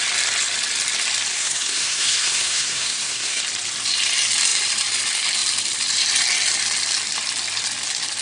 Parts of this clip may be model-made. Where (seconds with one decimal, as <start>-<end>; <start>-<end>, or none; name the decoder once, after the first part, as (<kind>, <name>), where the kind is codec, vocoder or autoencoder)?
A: 1.3-3.4 (codec, SNAC)